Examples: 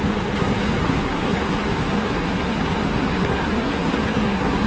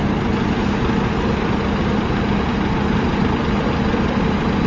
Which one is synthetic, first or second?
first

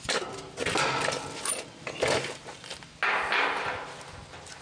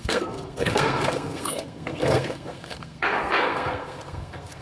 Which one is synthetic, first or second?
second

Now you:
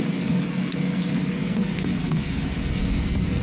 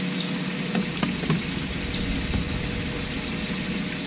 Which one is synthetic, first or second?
first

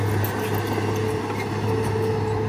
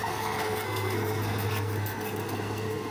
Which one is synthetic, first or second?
second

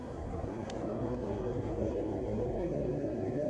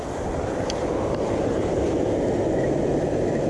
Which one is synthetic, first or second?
first